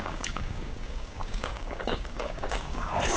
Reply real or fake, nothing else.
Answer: fake